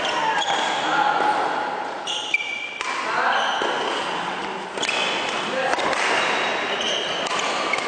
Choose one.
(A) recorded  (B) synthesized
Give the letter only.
A